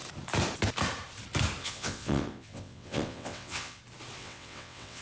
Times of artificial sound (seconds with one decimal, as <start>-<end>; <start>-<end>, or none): 1.6-3.8; 4.2-5.0